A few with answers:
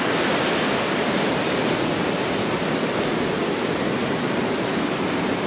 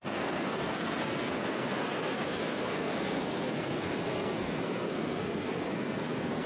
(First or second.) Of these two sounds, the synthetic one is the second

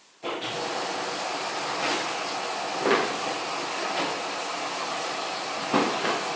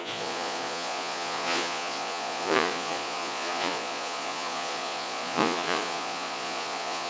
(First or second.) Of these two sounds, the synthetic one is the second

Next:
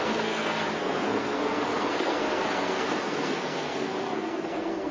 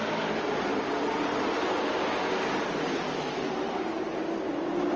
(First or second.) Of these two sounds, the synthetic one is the first